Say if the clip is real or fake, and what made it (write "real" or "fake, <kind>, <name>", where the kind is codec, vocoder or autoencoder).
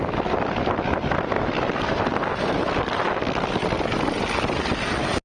real